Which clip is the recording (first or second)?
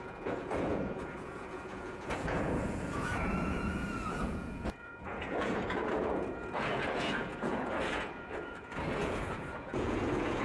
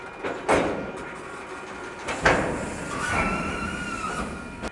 second